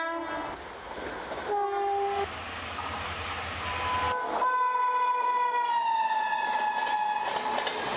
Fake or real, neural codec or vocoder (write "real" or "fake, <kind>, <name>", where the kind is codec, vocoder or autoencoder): real